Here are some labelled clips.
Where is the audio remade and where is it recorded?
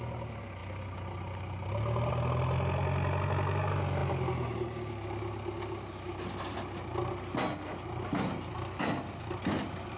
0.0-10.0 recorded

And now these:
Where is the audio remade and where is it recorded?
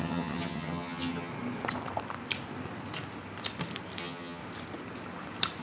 0.0-1.3 remade; 1.3-4.0 recorded; 4.0-4.4 remade; 4.4-5.6 recorded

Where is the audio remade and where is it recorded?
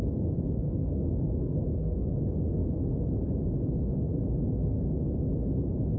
0.0-0.6 recorded; 0.6-2.1 remade; 2.1-6.0 recorded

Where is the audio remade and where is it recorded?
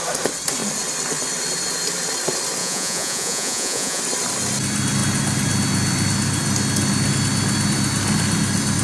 0.0-2.6 recorded; 2.6-4.0 remade; 4.0-8.8 recorded